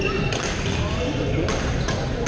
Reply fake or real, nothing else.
real